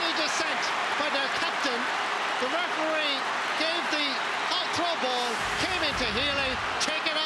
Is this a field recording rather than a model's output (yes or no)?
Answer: yes